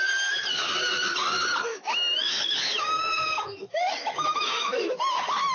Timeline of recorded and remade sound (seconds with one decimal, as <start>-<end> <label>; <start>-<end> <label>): 0.0-1.7 recorded; 1.7-5.0 remade; 5.0-5.5 recorded